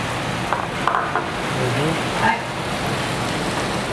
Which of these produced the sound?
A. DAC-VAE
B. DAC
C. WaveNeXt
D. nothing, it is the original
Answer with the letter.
D